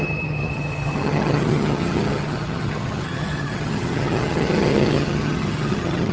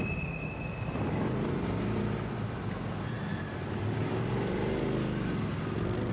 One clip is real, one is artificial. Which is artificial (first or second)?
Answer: first